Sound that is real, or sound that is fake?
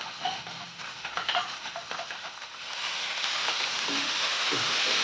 fake